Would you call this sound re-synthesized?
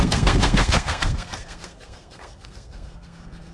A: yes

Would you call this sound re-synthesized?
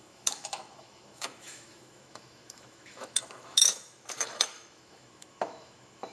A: yes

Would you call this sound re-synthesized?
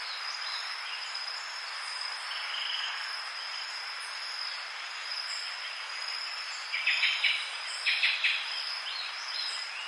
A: no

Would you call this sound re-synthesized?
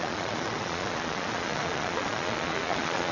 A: yes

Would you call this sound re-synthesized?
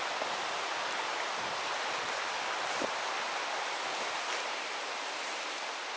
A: no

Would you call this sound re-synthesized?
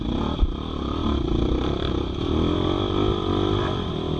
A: yes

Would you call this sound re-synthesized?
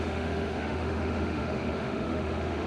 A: yes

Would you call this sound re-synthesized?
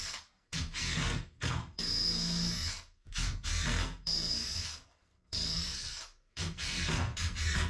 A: yes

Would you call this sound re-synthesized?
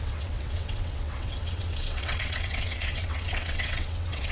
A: yes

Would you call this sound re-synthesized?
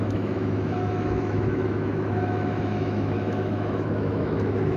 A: yes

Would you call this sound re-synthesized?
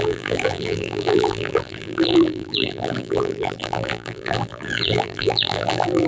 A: yes